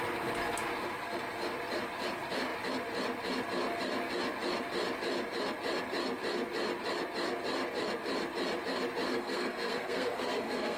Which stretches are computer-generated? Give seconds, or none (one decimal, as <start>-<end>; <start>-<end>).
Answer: 9.1-10.8